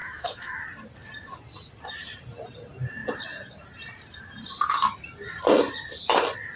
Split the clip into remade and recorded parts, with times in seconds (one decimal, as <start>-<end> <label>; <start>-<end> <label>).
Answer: 0.0-0.6 remade; 0.6-6.6 recorded